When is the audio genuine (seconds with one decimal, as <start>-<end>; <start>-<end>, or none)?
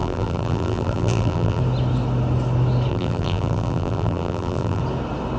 1.6-2.9; 4.8-5.4